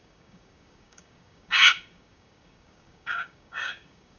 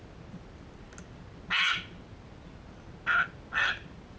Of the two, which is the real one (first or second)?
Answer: second